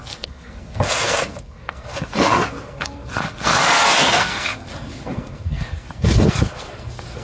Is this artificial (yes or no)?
yes